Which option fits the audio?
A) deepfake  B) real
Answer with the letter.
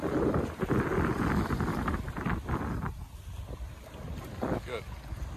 B